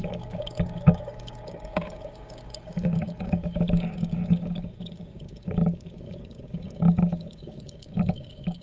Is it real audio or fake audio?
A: fake